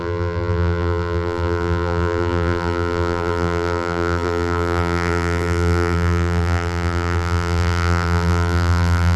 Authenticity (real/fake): fake